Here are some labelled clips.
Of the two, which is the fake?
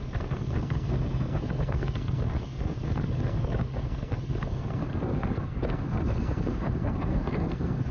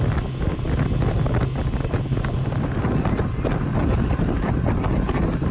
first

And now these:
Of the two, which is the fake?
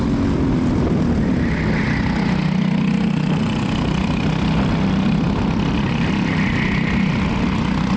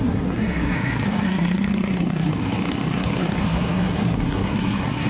second